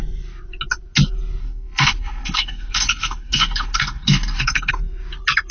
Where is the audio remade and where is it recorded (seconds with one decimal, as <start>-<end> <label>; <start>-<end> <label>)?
0.0-1.4 recorded; 1.4-4.7 remade; 4.7-5.5 recorded